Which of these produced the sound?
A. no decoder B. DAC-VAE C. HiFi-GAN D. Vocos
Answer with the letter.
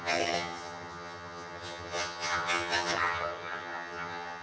C